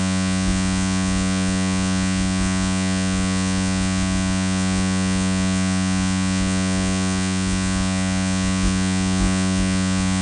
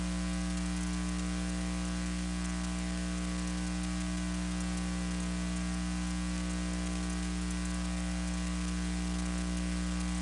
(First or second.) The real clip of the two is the second